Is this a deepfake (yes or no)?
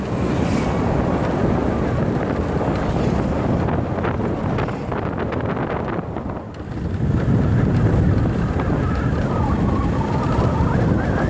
no